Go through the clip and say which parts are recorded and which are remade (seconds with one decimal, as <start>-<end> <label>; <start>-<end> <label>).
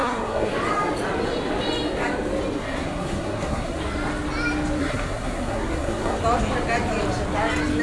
0.0-0.5 remade; 0.5-2.6 recorded; 2.6-3.8 remade; 3.8-4.8 recorded; 4.8-6.2 remade; 6.2-7.8 recorded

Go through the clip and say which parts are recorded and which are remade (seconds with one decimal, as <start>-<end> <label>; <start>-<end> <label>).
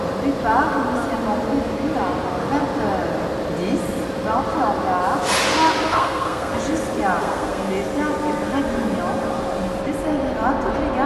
0.0-5.9 recorded; 5.9-6.5 remade; 6.5-7.2 recorded; 7.2-7.7 remade; 7.7-11.1 recorded